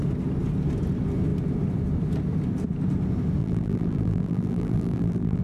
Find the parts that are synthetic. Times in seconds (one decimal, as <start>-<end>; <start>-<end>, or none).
3.4-5.4